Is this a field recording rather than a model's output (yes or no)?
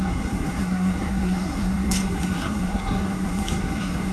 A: no